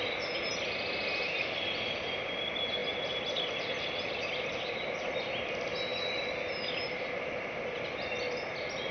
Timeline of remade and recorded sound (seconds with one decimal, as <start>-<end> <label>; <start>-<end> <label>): 0.0-8.9 recorded